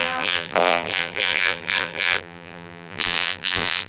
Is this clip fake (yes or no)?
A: yes